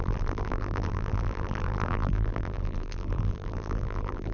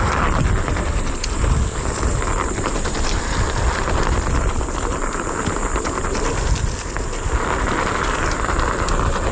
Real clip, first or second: second